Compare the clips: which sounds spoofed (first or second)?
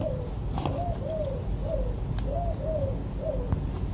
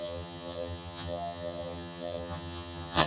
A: second